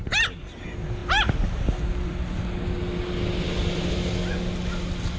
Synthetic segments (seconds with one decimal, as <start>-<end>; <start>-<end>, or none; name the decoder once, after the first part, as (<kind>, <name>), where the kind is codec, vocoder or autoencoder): none